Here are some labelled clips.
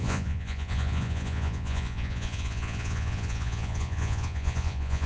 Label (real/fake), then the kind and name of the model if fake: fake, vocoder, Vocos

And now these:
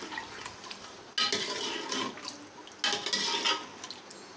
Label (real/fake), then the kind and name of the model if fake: real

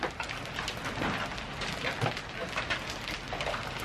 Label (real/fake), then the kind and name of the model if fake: real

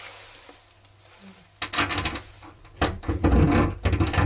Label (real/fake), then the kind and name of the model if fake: real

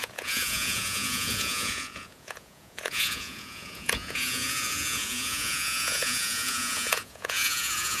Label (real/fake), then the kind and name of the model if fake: fake, vocoder, Vocos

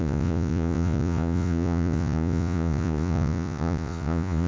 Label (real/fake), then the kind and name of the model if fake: fake, vocoder, Vocos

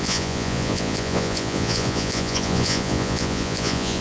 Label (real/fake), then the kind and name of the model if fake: fake, vocoder, Vocos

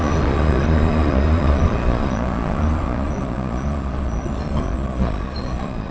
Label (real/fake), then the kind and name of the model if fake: fake, vocoder, Vocos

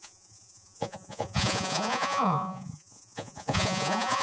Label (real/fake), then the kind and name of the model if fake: fake, vocoder, Vocos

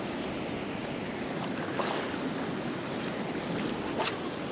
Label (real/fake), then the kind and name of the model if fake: real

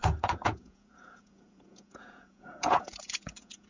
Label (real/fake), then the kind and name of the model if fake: fake, vocoder, Vocos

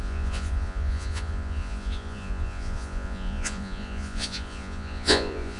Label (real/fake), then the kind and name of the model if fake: fake, vocoder, Vocos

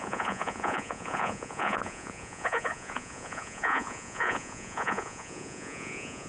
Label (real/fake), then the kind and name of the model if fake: fake, vocoder, Vocos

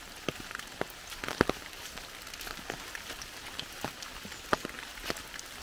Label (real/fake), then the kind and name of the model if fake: real